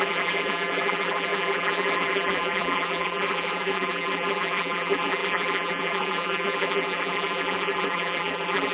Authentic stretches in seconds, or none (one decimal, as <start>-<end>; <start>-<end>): none